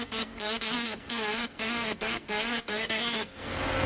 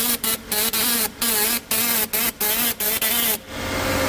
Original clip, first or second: second